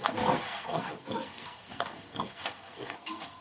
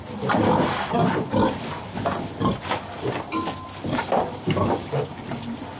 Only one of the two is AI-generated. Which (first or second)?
first